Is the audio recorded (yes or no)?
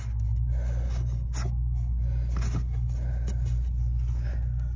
yes